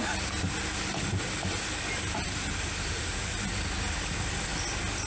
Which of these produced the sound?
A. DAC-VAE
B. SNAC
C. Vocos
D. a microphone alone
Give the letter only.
D